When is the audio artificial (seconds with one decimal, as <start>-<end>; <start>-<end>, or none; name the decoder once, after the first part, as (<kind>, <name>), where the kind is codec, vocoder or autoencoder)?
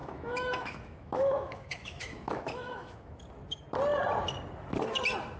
0.0-3.2 (autoencoder, DAC-VAE)